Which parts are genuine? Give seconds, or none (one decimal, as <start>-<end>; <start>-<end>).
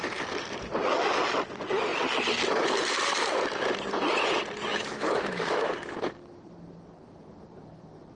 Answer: 0.0-4.7; 5.7-8.2